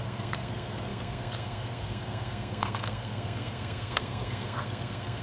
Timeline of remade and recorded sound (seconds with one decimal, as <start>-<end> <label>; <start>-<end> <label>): 0.0-5.2 remade